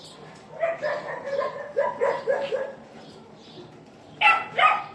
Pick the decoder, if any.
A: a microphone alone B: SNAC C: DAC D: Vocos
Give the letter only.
A